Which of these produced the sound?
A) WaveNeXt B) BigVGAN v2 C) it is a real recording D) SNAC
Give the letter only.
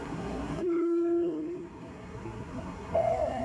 D